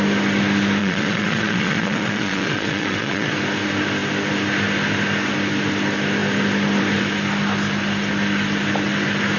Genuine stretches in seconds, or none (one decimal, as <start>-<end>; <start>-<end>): 0.0-0.8; 3.3-9.4